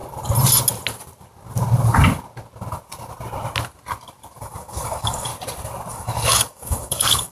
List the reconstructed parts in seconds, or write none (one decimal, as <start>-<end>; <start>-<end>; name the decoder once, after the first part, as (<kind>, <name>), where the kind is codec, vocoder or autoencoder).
4.4-5.3 (codec, DAC); 5.9-7.3